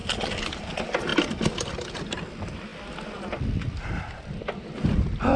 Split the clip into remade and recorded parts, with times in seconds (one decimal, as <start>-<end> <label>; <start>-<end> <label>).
0.0-5.4 recorded